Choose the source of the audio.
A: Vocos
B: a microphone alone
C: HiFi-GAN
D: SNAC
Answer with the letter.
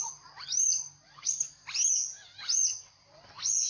B